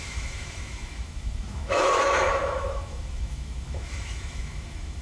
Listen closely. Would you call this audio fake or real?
fake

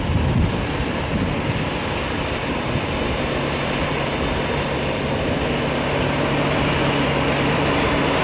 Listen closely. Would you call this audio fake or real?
real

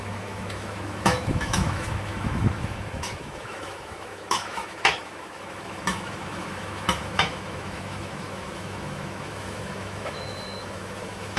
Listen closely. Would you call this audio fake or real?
fake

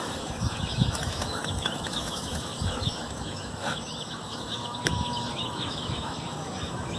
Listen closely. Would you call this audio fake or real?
fake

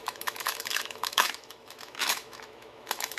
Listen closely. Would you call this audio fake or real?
fake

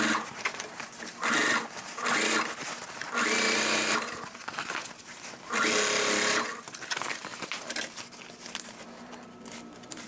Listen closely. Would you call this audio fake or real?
real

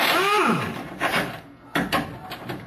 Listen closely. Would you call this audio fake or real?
real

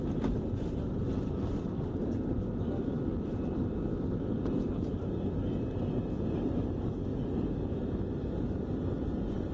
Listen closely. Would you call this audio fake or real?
real